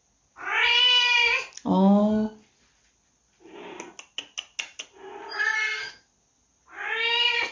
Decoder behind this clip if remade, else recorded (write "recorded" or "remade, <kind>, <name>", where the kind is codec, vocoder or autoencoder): recorded